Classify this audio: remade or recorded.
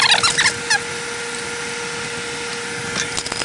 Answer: recorded